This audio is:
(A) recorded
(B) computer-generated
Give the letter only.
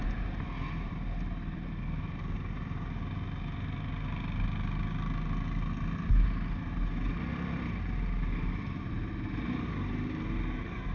A